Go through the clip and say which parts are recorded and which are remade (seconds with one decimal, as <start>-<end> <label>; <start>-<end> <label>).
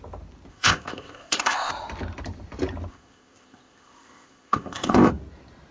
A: 0.0-0.5 recorded; 0.5-1.7 remade; 1.7-2.9 recorded; 2.9-5.1 remade; 5.1-5.7 recorded